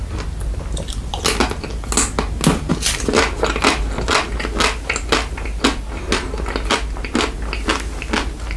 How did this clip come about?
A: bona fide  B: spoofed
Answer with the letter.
A